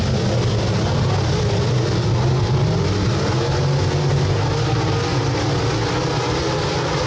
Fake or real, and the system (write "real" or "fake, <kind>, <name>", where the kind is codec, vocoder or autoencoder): real